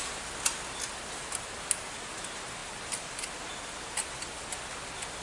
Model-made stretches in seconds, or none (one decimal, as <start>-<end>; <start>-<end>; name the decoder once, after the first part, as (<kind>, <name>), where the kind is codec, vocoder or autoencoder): none